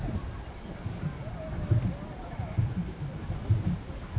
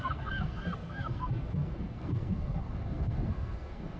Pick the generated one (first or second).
second